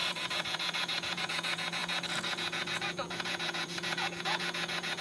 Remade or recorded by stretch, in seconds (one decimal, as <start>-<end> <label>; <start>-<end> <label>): 0.0-5.0 remade